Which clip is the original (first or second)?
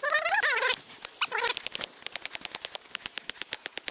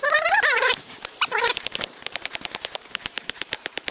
first